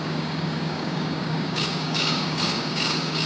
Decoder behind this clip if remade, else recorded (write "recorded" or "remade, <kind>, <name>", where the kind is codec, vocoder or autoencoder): remade, codec, DAC